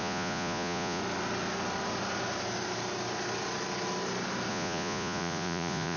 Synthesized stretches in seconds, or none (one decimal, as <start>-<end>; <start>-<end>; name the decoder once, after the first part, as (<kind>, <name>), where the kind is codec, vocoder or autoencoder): 0.0-1.0 (vocoder, Vocos); 4.5-6.0